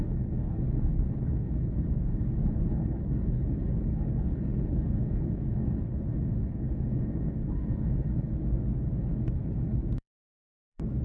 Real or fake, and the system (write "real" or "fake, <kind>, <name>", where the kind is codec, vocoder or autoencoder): fake, codec, HILCodec